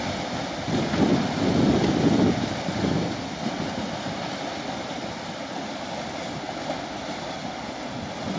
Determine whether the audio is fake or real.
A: real